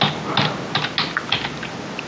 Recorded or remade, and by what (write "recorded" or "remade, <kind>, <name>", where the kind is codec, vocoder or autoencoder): recorded